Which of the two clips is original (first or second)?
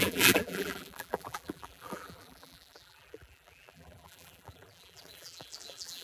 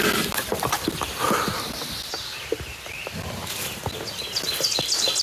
second